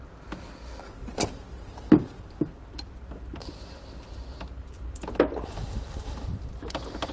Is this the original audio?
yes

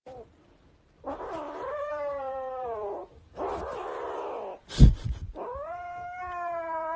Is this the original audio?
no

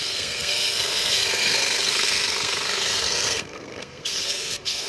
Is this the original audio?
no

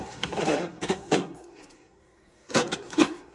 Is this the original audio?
no